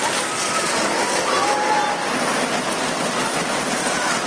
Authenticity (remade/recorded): recorded